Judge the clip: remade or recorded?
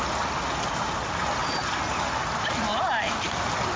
recorded